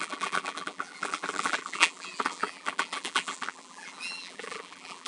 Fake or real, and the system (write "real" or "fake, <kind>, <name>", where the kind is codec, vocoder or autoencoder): fake, vocoder, BigVGAN v2